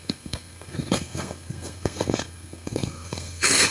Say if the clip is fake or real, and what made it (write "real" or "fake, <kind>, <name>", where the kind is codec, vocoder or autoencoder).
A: fake, codec, SNAC